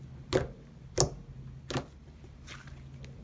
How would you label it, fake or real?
real